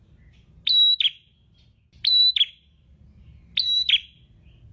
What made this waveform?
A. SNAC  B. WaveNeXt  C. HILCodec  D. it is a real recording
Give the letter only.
D